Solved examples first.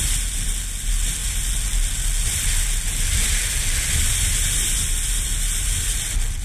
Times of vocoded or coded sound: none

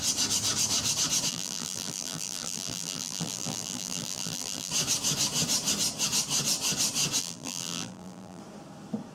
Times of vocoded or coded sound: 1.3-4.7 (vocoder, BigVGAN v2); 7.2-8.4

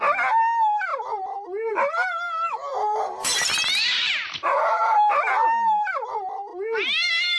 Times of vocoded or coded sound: 0.9-5.3 (vocoder, BigVGAN v2); 6.5-7.4